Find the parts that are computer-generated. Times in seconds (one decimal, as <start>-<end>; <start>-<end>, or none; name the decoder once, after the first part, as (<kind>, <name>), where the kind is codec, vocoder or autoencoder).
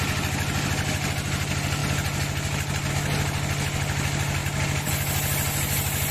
none